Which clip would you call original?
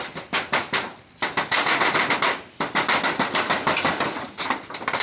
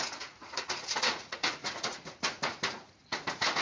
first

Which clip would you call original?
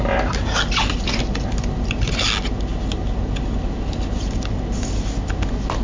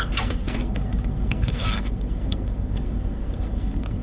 first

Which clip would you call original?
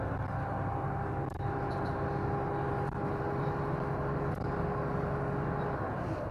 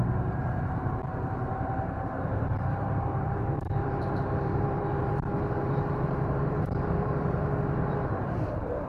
first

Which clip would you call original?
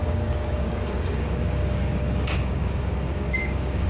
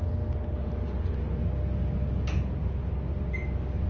second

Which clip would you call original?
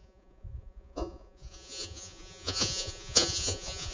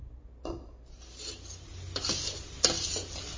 second